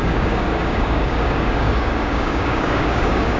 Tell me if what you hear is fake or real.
fake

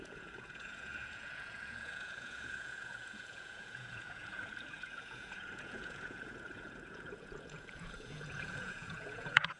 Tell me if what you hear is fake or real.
fake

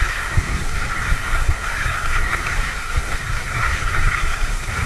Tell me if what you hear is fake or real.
fake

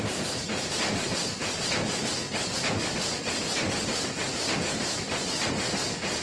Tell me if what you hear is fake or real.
real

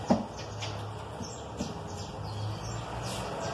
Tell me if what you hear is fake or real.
real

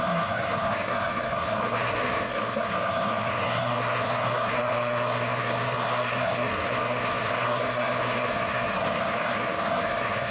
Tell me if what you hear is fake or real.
fake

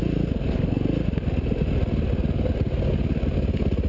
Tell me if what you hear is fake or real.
real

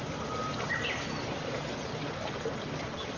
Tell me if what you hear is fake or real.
real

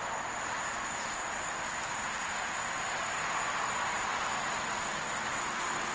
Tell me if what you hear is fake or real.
real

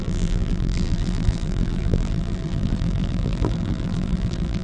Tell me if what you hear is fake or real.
fake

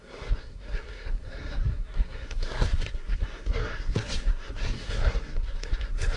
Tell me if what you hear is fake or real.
fake